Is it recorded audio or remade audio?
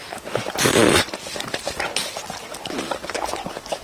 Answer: recorded